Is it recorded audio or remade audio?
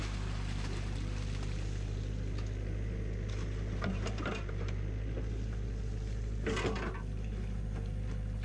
recorded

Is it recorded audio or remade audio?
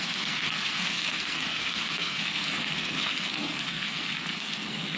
remade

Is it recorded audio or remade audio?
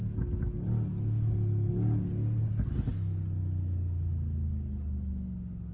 recorded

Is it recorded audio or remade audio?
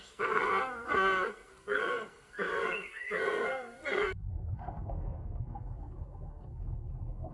remade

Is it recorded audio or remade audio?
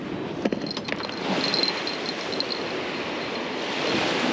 recorded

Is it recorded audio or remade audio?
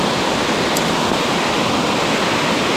recorded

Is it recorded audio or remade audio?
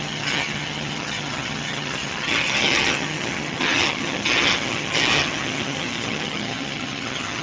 remade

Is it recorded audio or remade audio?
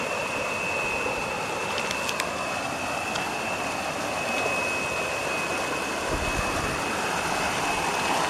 recorded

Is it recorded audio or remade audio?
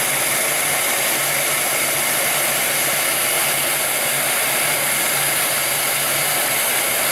recorded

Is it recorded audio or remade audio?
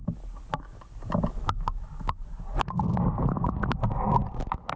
recorded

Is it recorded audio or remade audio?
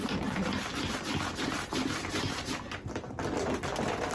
recorded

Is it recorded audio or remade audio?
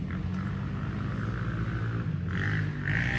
recorded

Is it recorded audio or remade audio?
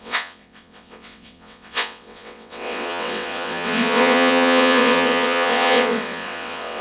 remade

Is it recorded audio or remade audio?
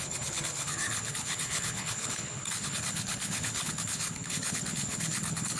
remade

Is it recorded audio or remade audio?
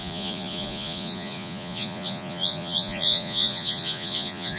remade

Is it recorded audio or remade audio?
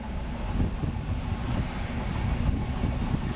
recorded